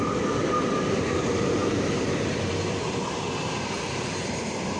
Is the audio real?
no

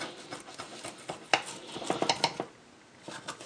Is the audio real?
yes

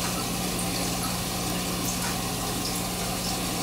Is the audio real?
yes